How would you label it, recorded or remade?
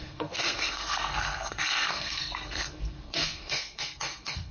remade